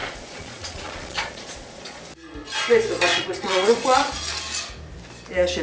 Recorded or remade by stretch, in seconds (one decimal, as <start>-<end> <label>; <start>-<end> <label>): 0.0-2.0 remade; 2.0-3.1 recorded; 3.1-4.1 remade; 4.1-5.6 recorded